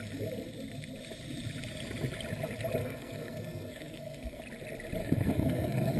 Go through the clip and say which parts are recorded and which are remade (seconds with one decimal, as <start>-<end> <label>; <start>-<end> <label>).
0.0-2.8 recorded; 2.8-4.4 remade; 4.4-5.0 recorded; 5.0-6.0 remade